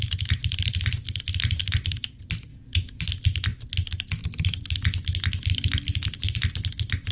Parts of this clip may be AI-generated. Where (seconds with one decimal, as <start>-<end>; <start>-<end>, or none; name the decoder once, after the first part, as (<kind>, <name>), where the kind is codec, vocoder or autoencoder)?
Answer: 2.5-3.0 (vocoder, Vocos)